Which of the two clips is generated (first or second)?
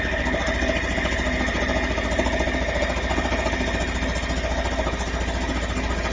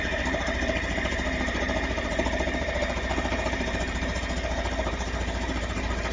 second